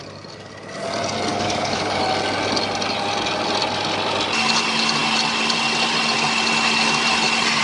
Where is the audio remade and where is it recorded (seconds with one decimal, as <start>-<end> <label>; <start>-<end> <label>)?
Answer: 0.0-1.3 recorded; 1.3-2.0 remade; 2.0-7.6 recorded

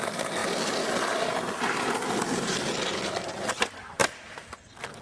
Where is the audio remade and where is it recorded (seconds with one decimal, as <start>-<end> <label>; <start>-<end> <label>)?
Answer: 0.0-4.0 remade; 4.0-5.0 recorded

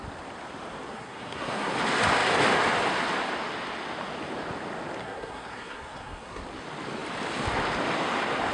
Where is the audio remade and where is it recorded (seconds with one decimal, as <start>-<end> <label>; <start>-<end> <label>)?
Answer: 0.0-0.9 recorded; 0.9-1.7 remade; 1.7-5.0 recorded; 5.0-6.4 remade; 6.4-8.5 recorded

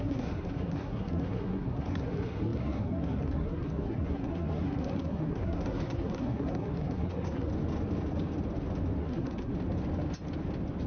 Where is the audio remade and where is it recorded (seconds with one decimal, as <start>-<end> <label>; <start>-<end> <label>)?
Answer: 0.0-7.5 remade; 7.5-9.0 recorded; 9.0-9.5 remade; 9.5-10.9 recorded